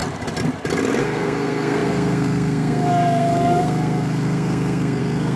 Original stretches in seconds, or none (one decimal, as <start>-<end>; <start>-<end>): 0.0-1.0